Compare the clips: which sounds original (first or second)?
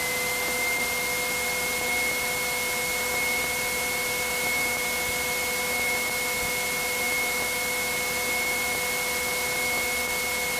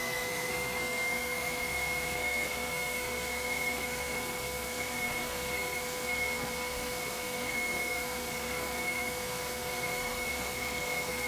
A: first